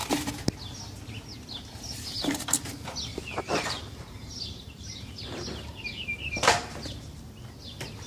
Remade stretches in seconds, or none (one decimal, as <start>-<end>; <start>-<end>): 3.1-7.3